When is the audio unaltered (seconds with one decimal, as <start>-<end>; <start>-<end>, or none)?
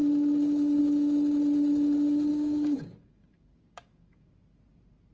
0.0-2.3; 4.3-5.1